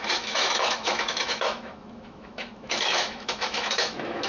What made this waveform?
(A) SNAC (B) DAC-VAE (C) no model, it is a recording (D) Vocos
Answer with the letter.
B